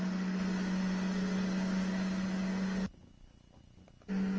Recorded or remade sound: recorded